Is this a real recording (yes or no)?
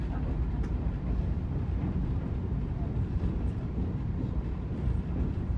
no